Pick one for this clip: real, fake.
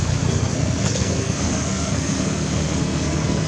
fake